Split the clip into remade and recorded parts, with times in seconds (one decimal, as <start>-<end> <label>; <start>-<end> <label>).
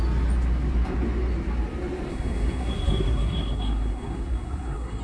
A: 0.0-2.1 recorded; 2.1-5.0 remade